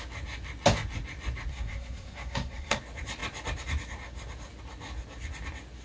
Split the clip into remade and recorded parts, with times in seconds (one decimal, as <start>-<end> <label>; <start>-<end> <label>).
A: 0.0-1.5 recorded; 1.5-2.8 remade; 2.8-5.8 recorded